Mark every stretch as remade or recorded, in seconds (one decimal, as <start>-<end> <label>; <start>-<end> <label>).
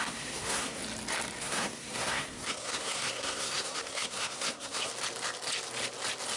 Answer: 0.0-0.8 remade; 0.8-1.4 recorded; 1.4-4.9 remade; 4.9-6.4 recorded